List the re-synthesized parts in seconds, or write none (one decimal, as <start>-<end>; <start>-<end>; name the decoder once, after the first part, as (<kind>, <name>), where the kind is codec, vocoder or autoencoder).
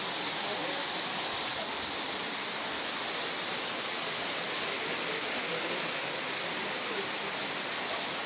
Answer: 0.0-1.5 (vocoder, BigVGAN v2); 2.0-8.3